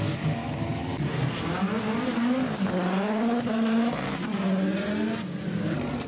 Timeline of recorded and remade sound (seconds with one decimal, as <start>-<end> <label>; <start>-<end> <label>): 0.0-0.7 recorded; 0.7-4.4 remade; 4.4-6.1 recorded